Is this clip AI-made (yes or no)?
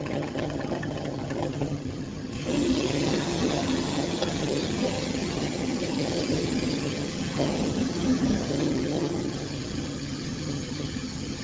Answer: yes